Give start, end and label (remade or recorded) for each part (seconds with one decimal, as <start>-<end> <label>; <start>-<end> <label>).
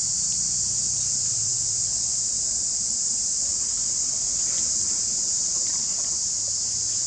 0.0-0.6 remade; 0.6-7.1 recorded